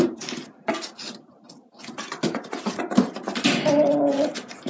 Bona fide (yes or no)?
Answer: yes